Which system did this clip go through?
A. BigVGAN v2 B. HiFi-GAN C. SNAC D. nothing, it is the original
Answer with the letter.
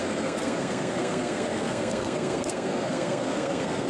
C